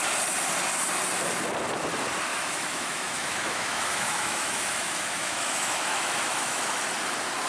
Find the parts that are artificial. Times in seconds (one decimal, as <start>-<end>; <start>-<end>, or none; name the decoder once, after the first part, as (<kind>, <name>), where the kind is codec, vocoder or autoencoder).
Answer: 2.3-6.8 (autoencoder, DAC-VAE)